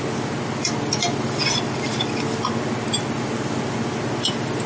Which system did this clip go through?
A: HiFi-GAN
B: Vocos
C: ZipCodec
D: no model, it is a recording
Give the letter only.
D